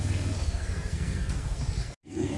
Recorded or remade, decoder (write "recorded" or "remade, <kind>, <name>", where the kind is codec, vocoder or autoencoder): remade, codec, SNAC